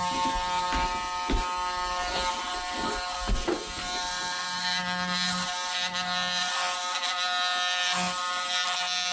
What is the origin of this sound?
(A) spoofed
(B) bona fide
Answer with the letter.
B